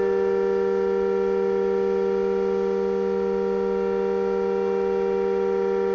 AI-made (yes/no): no